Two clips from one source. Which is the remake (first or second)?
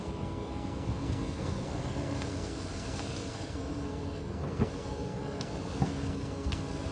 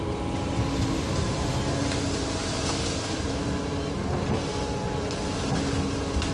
first